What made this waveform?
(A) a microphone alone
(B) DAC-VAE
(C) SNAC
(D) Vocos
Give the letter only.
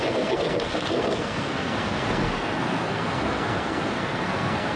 C